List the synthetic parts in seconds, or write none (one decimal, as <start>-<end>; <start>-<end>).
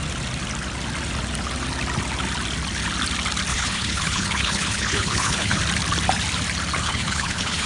3.5-5.6; 6.8-7.7